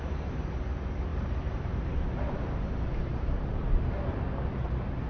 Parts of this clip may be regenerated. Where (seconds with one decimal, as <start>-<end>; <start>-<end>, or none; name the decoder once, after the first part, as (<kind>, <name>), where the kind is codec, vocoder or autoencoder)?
1.1-4.2 (vocoder, BigVGAN v2)